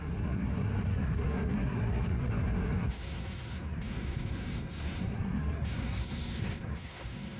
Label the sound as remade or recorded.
remade